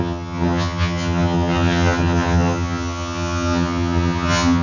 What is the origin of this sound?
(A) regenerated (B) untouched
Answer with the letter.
A